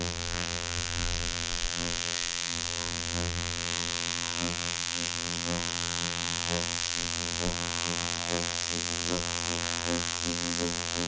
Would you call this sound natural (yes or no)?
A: no